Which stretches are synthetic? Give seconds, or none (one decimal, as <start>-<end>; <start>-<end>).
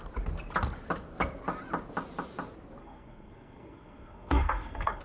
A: 2.8-5.0